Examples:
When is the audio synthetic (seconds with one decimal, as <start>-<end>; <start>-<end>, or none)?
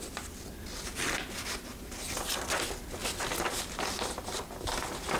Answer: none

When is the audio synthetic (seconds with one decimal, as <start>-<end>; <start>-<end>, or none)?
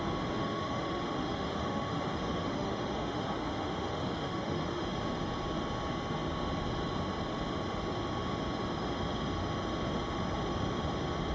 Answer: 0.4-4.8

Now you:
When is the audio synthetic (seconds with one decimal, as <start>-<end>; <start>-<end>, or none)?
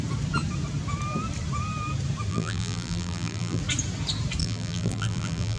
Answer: 2.3-3.6; 4.4-5.6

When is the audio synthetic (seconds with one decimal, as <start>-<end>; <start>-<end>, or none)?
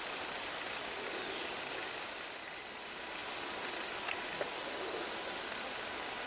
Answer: none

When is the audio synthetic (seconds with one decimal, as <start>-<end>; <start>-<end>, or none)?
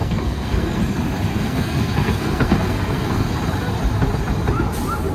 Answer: 0.0-0.8; 1.3-3.3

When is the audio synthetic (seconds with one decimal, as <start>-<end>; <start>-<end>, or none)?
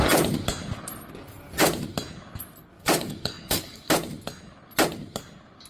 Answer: 2.7-3.9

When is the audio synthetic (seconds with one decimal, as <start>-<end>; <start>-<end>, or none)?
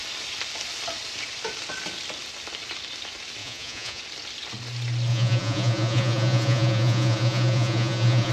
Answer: 3.4-4.0; 5.1-8.3